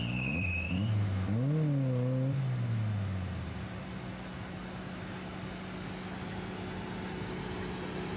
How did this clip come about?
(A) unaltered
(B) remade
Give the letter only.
A